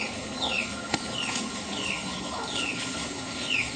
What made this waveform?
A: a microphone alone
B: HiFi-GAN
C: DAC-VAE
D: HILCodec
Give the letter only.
D